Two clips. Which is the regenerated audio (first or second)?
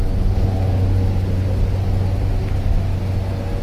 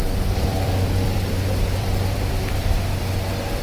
second